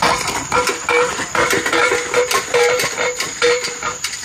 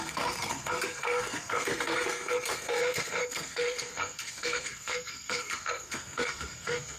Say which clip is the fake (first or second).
second